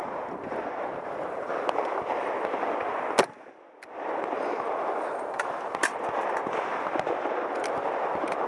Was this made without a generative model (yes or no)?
yes